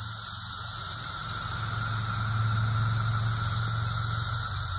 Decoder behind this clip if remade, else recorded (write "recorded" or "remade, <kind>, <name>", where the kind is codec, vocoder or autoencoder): recorded